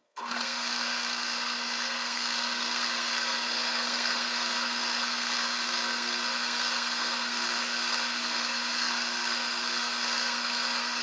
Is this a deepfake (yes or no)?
yes